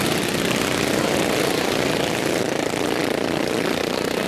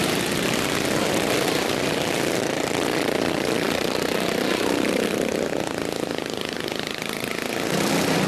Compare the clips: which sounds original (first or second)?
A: first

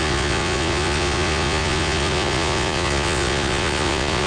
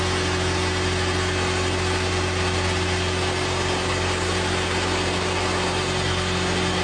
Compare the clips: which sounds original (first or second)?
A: second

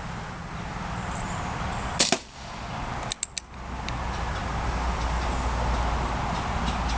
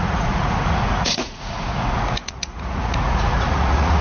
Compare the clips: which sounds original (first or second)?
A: first